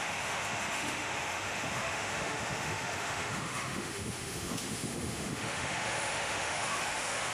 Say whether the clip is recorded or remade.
remade